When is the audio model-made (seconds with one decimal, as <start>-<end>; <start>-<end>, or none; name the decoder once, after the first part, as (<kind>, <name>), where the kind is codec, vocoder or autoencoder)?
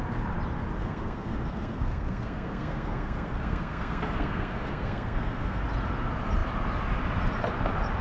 0.8-5.6 (codec, SNAC)